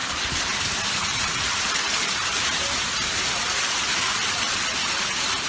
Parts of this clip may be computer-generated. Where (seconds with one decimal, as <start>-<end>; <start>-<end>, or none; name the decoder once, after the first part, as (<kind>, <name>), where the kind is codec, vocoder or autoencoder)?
0.0-0.6 (vocoder, BigVGAN v2); 1.0-3.4